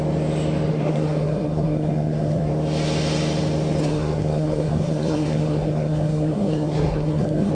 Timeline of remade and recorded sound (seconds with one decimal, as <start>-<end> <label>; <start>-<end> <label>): 0.0-0.7 recorded; 0.7-2.5 remade; 2.5-3.8 recorded; 3.8-7.5 remade